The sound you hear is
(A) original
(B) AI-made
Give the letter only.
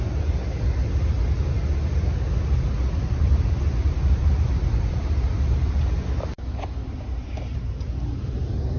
A